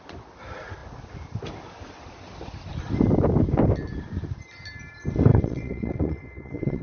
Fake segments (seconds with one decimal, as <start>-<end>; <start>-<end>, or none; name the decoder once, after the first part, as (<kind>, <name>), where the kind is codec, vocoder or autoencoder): 5.3-6.8 (vocoder, WaveNeXt)